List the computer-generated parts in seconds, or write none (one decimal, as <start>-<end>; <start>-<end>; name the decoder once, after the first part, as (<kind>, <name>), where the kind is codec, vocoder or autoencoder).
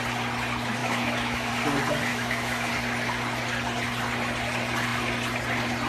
0.8-1.5 (autoencoder, DAC-VAE); 2.1-2.7